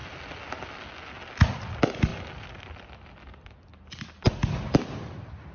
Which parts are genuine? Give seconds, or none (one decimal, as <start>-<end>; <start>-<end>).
0.0-5.5